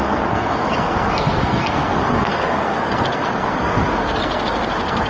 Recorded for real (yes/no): no